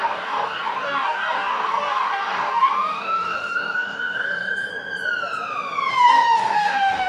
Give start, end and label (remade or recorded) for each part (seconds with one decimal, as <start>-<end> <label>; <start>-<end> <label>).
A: 0.0-4.7 remade; 4.7-5.9 recorded; 5.9-7.1 remade